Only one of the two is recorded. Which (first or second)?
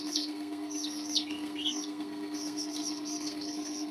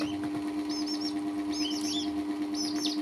second